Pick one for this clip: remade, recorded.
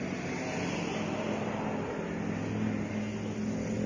recorded